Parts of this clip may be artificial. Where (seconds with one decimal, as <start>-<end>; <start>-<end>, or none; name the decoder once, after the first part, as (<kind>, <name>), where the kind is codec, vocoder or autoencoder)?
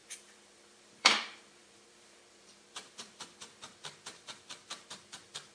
0.0-5.5 (vocoder, BigVGAN v2)